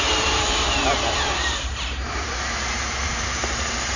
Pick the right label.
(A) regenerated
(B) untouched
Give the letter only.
A